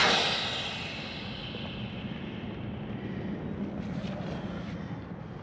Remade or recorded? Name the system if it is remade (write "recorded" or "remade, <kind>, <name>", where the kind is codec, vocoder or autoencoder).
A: recorded